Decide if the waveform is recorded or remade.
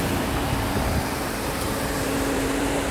remade